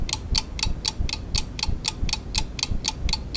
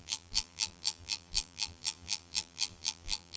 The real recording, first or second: first